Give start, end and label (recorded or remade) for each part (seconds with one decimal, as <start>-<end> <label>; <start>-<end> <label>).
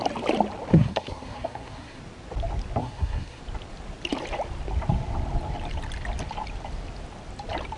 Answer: 0.0-0.7 recorded; 0.7-2.0 remade; 2.0-2.8 recorded; 2.8-3.4 remade; 3.4-7.8 recorded